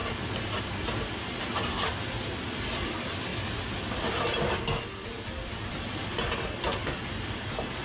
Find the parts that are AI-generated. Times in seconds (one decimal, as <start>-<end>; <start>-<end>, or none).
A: none